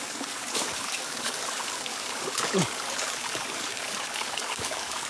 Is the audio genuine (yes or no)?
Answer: no